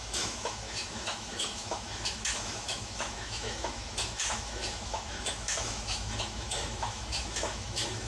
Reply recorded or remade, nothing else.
remade